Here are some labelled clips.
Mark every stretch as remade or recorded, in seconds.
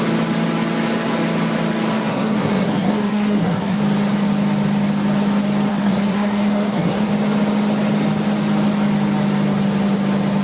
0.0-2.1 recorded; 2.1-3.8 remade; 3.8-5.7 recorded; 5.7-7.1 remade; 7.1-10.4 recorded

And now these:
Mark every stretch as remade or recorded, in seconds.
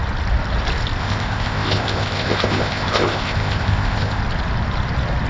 0.0-1.0 recorded; 1.0-4.2 remade; 4.2-5.3 recorded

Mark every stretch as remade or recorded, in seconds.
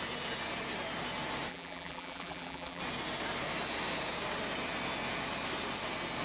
0.0-1.5 recorded; 1.5-2.8 remade; 2.8-6.2 recorded